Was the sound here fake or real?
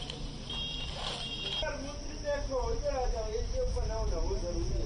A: real